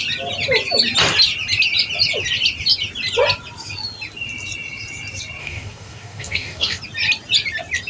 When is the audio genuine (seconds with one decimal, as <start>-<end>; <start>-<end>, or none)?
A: 0.0-5.4; 6.8-7.9

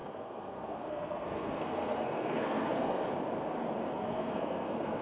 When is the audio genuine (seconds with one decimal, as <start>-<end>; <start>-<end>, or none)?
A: 3.0-3.8